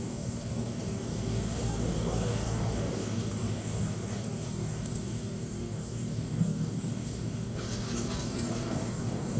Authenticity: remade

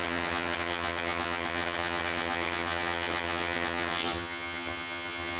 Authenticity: remade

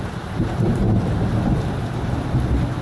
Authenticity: recorded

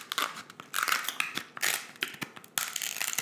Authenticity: recorded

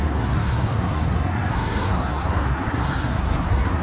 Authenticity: remade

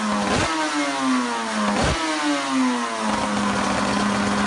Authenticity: recorded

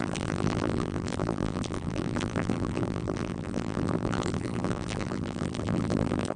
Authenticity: remade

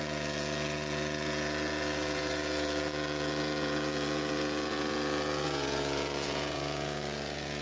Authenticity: remade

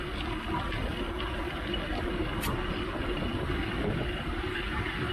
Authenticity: recorded